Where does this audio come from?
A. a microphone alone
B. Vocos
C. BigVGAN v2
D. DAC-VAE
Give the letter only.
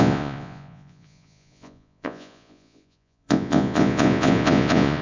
B